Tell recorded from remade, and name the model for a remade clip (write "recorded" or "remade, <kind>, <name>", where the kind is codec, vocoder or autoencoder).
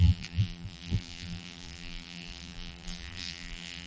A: remade, vocoder, BigVGAN v2